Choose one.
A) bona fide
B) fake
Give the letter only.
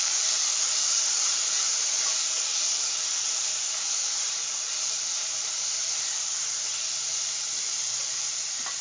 B